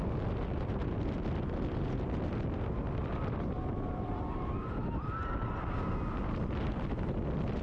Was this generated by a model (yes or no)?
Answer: no